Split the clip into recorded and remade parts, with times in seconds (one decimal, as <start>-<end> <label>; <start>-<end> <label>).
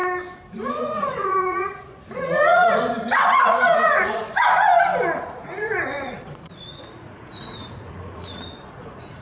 0.0-0.5 recorded; 0.5-4.7 remade; 4.7-5.3 recorded; 5.3-9.2 remade